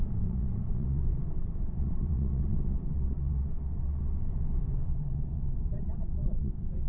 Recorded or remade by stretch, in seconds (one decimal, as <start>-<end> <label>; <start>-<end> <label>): 0.0-6.9 remade